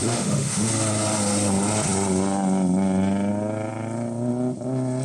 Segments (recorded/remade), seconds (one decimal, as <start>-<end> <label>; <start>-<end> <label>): 0.0-0.7 remade; 0.7-5.0 recorded